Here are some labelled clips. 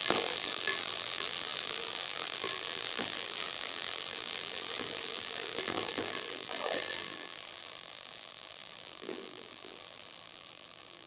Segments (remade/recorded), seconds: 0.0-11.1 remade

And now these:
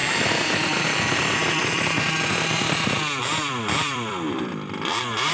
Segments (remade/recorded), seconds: 0.0-5.3 remade

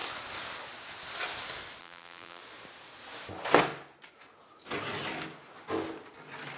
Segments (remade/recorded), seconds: 0.0-1.8 recorded; 1.8-2.4 remade; 2.4-6.6 recorded

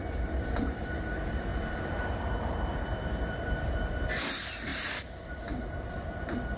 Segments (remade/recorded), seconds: 0.0-6.6 remade

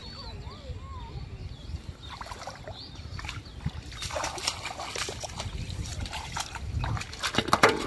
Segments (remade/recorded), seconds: 0.0-1.6 recorded; 1.6-3.4 remade; 3.4-5.9 recorded; 5.9-6.5 remade; 6.5-7.9 recorded

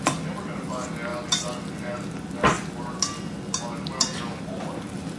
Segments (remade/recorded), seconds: 0.0-5.2 recorded

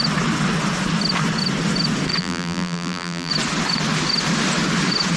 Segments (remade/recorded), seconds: 0.0-2.2 recorded; 2.2-3.3 remade; 3.3-5.2 recorded